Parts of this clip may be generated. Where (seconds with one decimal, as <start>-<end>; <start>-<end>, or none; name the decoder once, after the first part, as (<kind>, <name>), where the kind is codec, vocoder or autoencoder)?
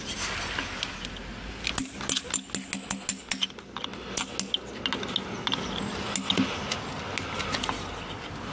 none